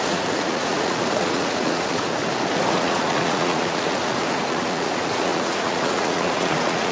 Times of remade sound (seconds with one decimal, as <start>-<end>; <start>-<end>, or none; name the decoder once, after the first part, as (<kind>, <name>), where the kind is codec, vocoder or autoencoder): 0.0-2.2 (vocoder, Vocos); 2.7-6.9